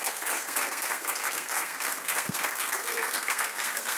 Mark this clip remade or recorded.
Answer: remade